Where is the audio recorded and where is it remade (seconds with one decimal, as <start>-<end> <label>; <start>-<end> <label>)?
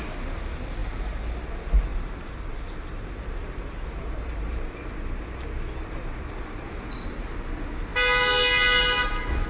0.0-1.9 recorded; 1.9-6.7 remade; 6.7-9.5 recorded